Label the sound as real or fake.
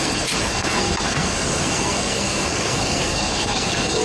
fake